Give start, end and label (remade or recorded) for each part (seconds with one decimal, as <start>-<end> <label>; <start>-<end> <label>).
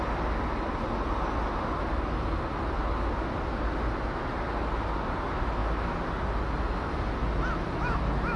0.0-8.4 recorded